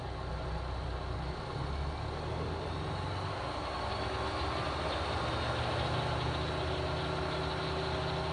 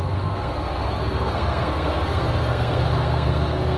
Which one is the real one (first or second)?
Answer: first